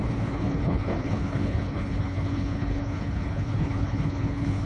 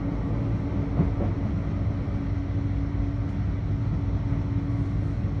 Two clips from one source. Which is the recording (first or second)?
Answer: second